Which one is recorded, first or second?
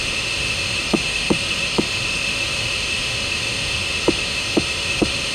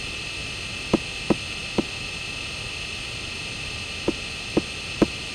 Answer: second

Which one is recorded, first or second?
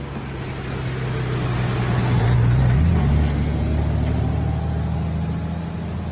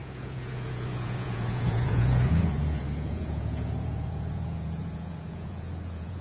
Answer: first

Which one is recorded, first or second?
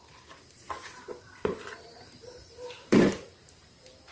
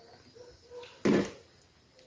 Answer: second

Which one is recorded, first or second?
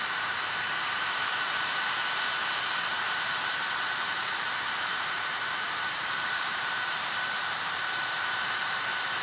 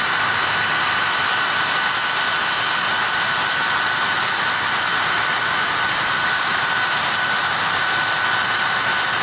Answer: second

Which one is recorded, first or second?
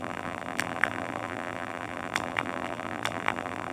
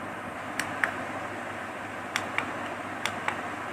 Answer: second